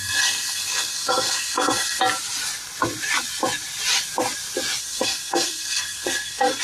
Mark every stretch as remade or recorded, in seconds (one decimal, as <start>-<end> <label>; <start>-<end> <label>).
0.0-2.0 remade; 2.0-4.8 recorded; 4.8-6.6 remade

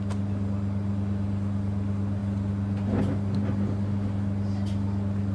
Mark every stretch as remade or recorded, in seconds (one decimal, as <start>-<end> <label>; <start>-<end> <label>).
0.0-5.3 recorded

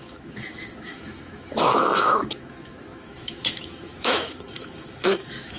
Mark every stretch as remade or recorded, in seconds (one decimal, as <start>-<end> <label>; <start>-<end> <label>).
0.0-5.6 remade

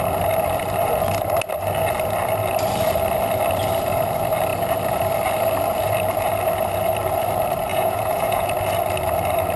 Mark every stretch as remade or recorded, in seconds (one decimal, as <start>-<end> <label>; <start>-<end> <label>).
0.0-7.7 recorded; 7.7-8.5 remade; 8.5-9.6 recorded

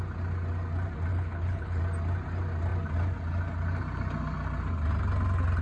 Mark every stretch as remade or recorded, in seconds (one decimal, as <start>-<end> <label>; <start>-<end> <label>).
0.0-1.1 recorded; 1.1-1.8 remade; 1.8-5.6 recorded